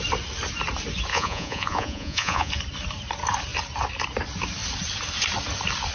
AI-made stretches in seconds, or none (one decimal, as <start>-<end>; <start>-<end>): 1.1-2.5